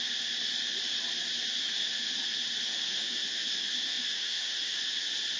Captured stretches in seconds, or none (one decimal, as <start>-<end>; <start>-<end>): 0.0-1.6; 2.2-2.6; 4.8-5.4